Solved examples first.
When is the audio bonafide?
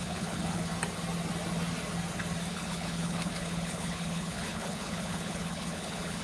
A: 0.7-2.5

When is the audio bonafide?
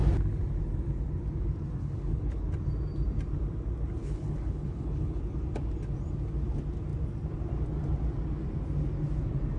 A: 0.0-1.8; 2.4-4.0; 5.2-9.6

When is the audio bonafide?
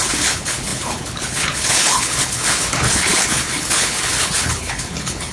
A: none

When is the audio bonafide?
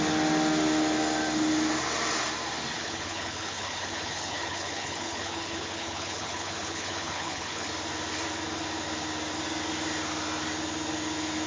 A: 0.0-2.7; 7.7-11.5